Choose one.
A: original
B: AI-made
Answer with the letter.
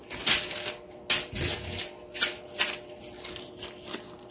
A